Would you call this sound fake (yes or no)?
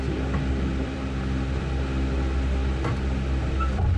yes